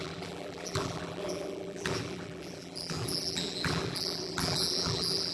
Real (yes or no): no